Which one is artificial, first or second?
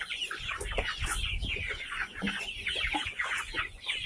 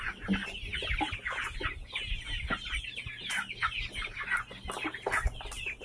first